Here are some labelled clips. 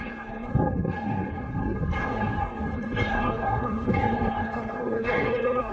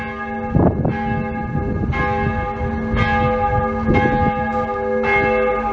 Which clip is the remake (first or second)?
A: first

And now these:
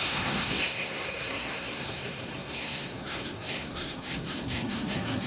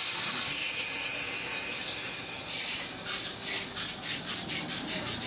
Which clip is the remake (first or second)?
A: first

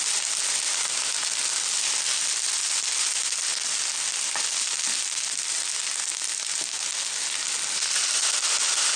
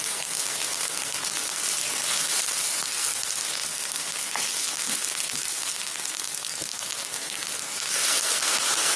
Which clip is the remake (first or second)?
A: second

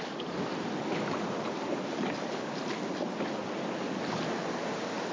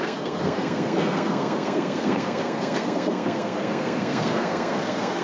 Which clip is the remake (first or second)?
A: second